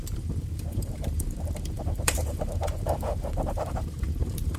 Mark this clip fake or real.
fake